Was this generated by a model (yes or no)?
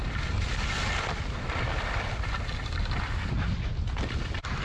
no